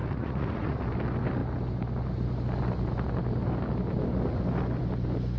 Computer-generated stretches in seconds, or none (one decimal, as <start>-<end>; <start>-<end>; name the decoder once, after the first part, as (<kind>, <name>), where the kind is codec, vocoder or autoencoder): 0.0-0.8 (vocoder, Vocos)